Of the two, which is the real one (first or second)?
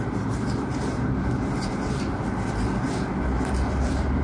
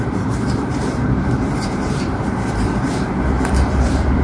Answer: first